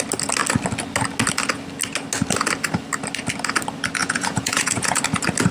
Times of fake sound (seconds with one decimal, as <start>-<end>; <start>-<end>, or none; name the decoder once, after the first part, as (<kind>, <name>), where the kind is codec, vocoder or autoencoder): 4.0-5.0 (vocoder, Vocos)